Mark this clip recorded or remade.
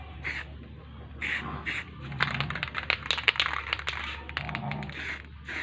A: recorded